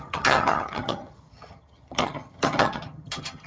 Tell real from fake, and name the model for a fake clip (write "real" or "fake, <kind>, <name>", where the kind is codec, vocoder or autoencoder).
fake, vocoder, HiFi-GAN